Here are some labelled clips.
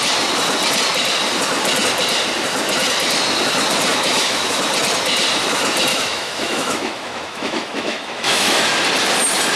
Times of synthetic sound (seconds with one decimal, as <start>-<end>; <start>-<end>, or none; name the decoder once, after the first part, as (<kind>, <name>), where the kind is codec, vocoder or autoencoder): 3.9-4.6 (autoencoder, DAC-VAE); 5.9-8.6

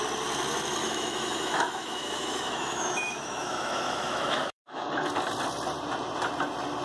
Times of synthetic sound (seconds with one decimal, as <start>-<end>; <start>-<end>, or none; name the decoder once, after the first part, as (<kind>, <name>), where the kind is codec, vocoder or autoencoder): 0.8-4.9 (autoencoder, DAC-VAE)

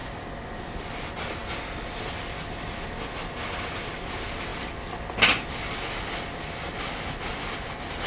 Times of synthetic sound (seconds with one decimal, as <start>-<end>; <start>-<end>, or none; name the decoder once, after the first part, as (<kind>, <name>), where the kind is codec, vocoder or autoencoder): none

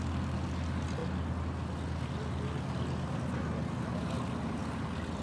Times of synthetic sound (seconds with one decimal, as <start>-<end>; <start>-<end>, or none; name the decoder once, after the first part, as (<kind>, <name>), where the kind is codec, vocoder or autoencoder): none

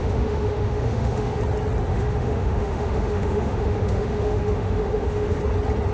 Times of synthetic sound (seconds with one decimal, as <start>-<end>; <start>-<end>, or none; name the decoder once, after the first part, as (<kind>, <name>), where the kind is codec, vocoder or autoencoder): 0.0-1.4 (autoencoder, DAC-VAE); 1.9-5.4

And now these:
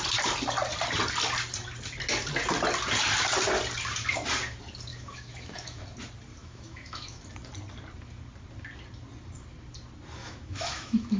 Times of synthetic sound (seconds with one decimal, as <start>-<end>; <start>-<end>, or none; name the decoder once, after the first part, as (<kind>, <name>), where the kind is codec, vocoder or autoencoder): 4.9-5.8 (autoencoder, DAC-VAE); 6.4-7.2; 10.2-11.2

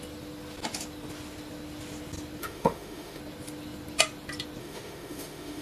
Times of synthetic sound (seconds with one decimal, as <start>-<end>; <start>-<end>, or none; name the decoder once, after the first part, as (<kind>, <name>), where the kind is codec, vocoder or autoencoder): 2.4-3.2 (autoencoder, DAC-VAE); 4.6-5.6